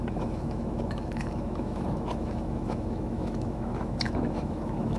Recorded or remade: remade